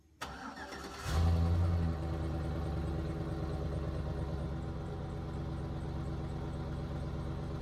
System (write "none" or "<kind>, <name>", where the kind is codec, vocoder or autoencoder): none